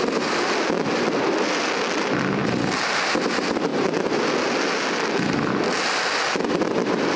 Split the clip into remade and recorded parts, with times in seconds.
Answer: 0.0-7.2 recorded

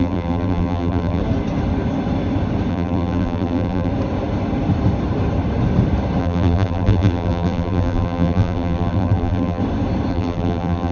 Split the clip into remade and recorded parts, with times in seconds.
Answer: 0.0-1.2 remade; 1.2-2.7 recorded; 2.7-3.9 remade; 3.9-6.2 recorded; 6.2-9.6 remade; 9.6-10.1 recorded; 10.1-10.9 remade

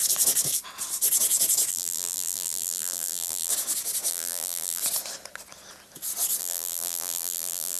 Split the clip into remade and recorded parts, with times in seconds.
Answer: 0.0-1.7 recorded; 1.7-3.5 remade; 3.5-4.1 recorded; 4.1-4.8 remade; 4.8-6.4 recorded; 6.4-7.8 remade

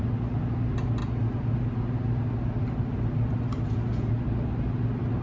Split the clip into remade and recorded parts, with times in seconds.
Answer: 0.0-5.2 recorded